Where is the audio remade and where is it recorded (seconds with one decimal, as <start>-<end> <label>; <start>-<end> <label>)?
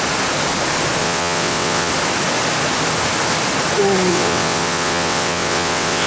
0.0-1.0 recorded; 1.0-1.9 remade; 1.9-4.1 recorded; 4.1-6.1 remade